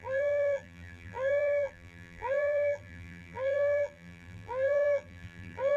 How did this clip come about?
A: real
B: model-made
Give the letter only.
B